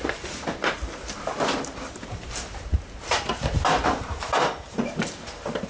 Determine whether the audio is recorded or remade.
remade